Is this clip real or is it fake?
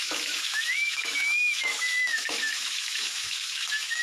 fake